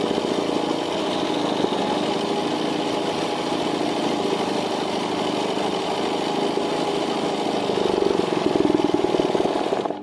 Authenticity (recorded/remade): recorded